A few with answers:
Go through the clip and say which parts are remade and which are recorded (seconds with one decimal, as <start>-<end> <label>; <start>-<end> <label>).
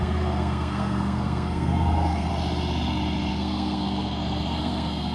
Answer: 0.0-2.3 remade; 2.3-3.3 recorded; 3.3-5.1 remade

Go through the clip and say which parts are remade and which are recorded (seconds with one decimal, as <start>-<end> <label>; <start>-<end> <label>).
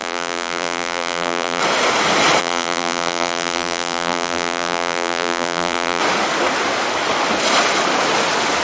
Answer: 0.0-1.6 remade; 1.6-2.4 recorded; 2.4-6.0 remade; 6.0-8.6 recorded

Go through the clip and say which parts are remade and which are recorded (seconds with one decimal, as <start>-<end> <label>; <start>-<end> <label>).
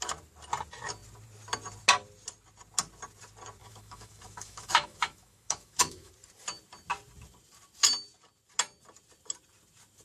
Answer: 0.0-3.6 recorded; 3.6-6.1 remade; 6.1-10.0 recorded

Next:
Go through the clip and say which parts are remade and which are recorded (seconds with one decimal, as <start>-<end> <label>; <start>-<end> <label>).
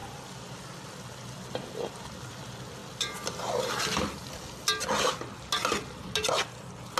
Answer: 0.0-7.0 recorded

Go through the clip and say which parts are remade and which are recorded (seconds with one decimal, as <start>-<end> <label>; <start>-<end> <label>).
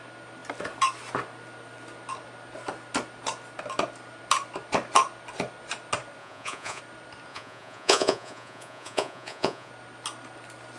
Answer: 0.0-6.2 recorded; 6.2-6.8 remade; 6.8-7.3 recorded; 7.3-9.7 remade; 9.7-10.8 recorded